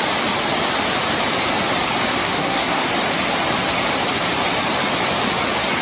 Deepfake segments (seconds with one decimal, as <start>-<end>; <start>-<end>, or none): 2.1-2.9